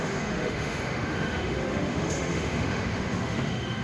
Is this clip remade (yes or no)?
yes